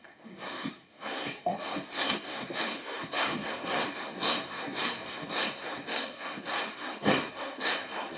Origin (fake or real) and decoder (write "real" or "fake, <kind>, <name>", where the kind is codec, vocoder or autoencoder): fake, codec, SNAC